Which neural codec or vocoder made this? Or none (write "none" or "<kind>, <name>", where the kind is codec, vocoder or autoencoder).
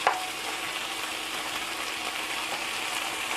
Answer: none